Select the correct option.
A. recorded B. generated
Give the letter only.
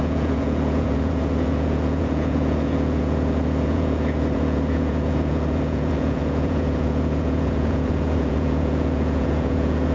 B